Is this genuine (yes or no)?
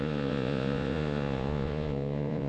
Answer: no